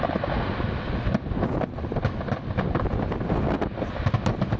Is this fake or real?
real